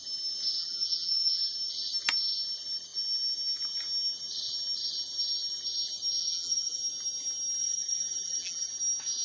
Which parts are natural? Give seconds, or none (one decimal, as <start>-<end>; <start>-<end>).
0.0-0.6; 1.4-6.2; 6.8-7.6; 8.7-9.2